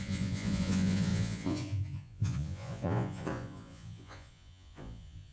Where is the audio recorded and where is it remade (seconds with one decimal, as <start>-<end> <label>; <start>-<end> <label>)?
0.0-5.3 remade